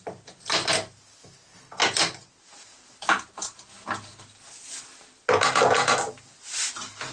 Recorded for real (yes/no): yes